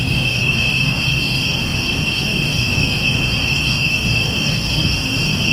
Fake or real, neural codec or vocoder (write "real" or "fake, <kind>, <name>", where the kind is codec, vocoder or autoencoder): fake, codec, DAC